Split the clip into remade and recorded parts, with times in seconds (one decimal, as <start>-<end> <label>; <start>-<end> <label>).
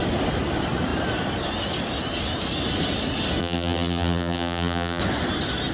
0.0-3.4 recorded; 3.4-5.0 remade; 5.0-5.7 recorded